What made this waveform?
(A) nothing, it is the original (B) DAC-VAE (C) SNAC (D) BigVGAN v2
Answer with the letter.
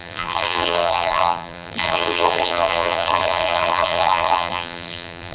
D